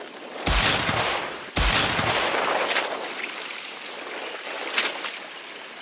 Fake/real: real